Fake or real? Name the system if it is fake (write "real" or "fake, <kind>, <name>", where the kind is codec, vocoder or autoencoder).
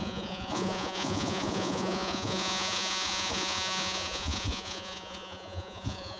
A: fake, vocoder, Vocos